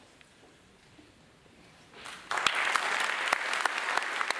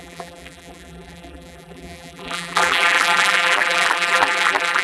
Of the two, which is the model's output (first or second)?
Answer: second